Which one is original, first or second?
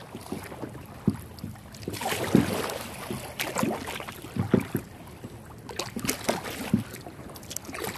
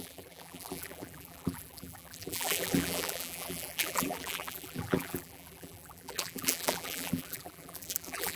first